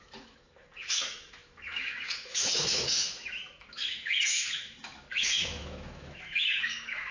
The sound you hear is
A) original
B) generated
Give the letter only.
B